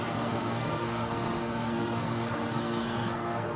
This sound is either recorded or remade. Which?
remade